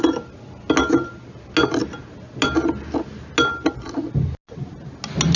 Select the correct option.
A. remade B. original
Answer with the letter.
B